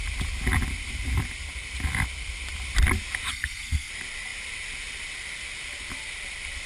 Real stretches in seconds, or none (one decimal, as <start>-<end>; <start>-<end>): 0.0-3.3; 3.9-6.7